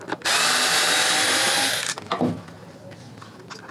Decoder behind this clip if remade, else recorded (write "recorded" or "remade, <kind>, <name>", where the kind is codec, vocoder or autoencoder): recorded